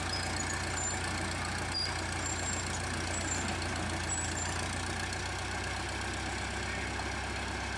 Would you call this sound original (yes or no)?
yes